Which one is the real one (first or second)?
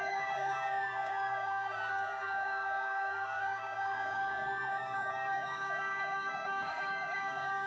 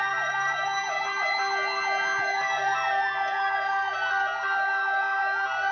second